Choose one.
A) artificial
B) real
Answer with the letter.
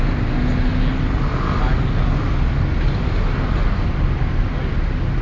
B